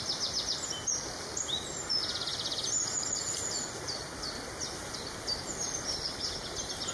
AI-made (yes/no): no